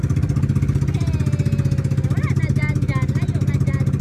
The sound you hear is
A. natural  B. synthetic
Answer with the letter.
A